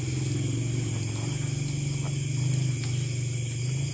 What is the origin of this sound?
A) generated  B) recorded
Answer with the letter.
B